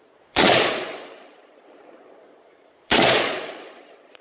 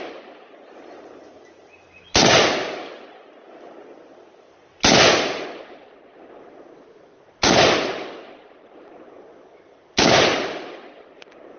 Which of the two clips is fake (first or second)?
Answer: first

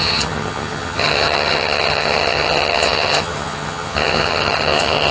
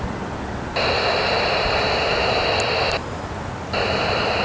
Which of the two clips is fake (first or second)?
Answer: first